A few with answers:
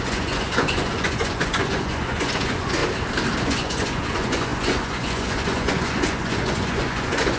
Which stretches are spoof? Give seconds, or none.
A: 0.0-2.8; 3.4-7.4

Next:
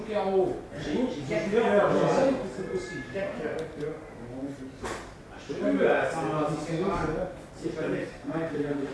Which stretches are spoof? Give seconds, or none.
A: 8.1-8.9

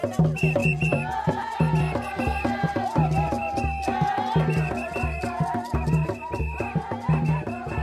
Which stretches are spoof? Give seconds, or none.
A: 0.6-1.5

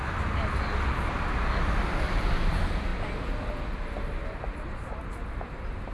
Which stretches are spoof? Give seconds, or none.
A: none